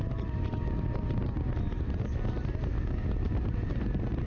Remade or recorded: recorded